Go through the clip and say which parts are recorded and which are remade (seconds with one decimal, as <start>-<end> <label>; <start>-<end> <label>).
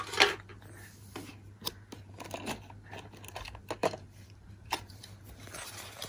0.0-3.8 recorded; 3.8-5.1 remade; 5.1-6.1 recorded